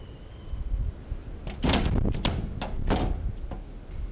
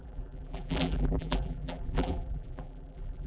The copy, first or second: second